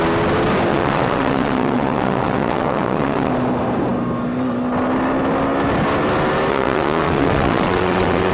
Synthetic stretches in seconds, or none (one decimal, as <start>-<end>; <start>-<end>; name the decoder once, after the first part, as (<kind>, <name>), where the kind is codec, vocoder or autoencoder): 0.7-3.3 (vocoder, WaveNeXt); 6.5-8.3